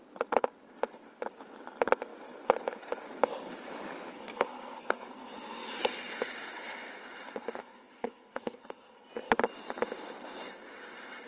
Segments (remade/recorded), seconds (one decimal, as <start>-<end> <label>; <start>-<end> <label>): 0.0-4.1 recorded; 4.1-5.8 remade; 5.8-7.6 recorded; 7.6-9.1 remade; 9.1-11.3 recorded